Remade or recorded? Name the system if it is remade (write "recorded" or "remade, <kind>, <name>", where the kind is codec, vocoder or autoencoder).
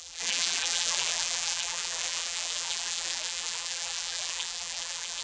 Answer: remade, vocoder, BigVGAN v2